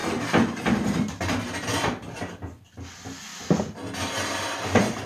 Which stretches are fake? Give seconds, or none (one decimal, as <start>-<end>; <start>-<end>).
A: none